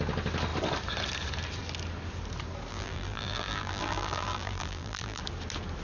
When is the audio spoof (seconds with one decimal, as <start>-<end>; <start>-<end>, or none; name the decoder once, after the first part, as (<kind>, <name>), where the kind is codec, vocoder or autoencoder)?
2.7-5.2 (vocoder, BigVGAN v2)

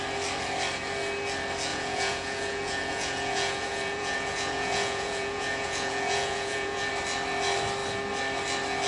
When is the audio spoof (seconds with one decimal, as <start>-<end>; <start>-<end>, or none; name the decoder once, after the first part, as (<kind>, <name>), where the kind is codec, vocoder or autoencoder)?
1.7-6.9 (vocoder, Vocos)

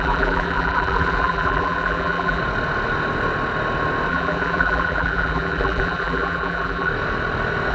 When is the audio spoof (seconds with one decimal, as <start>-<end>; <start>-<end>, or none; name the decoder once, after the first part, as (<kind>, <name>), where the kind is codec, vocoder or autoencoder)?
0.0-2.4 (vocoder, BigVGAN v2); 4.1-6.9